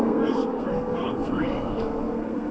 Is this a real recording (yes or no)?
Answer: no